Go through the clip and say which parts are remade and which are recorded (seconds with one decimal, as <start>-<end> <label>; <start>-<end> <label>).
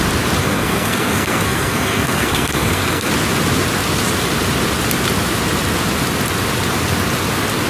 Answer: 0.0-0.4 recorded; 0.4-3.1 remade; 3.1-7.7 recorded